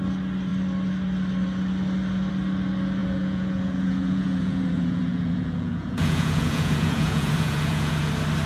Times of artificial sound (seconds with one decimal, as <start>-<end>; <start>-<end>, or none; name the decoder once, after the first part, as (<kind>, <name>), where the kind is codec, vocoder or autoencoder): 3.0-8.1 (vocoder, Vocos)